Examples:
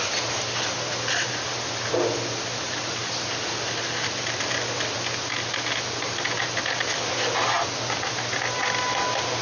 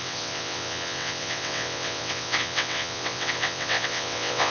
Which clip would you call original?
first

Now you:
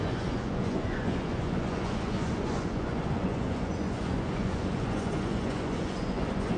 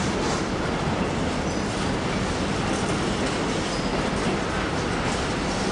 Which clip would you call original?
second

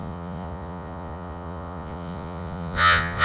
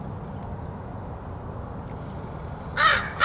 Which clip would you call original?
second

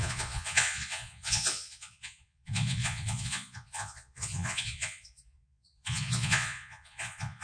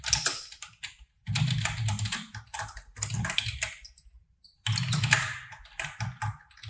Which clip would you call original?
second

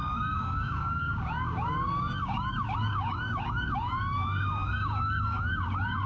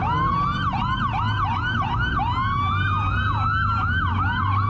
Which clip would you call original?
second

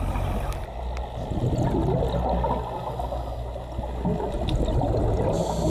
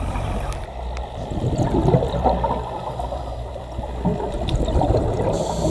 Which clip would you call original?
first